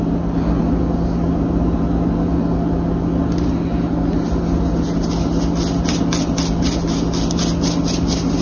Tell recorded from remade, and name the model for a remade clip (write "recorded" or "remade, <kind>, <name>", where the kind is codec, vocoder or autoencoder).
recorded